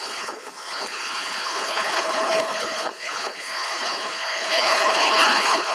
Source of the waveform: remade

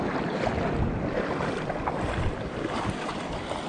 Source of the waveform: recorded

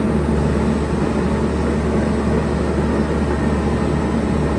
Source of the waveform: recorded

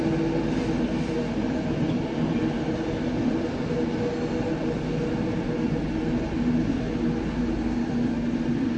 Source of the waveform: recorded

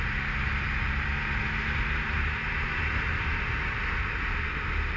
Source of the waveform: recorded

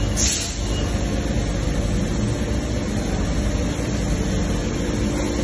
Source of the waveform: recorded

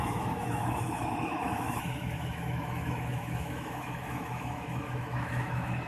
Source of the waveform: remade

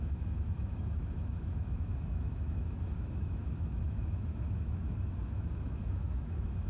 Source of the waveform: remade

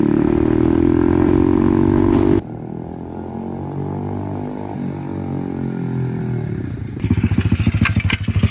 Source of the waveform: recorded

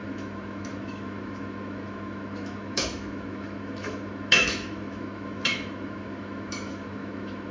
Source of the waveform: remade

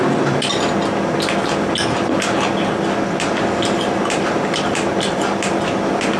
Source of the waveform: recorded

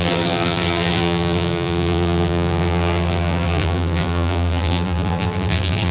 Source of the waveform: remade